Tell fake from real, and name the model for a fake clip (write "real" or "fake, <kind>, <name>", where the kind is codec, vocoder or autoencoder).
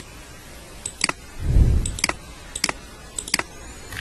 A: real